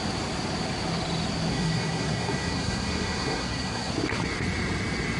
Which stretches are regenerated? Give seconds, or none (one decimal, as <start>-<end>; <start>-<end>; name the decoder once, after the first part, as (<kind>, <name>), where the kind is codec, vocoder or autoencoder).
1.5-3.9 (codec, SNAC)